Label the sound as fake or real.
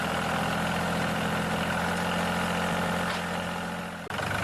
real